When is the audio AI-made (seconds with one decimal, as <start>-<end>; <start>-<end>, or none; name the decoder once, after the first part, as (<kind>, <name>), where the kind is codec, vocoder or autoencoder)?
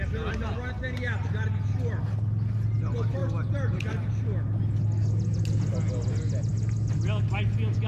none